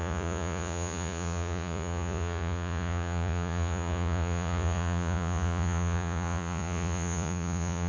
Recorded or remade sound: remade